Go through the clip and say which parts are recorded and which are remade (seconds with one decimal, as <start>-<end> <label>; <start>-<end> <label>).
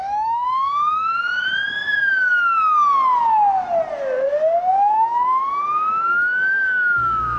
0.0-2.3 remade; 2.3-4.7 recorded; 4.7-7.4 remade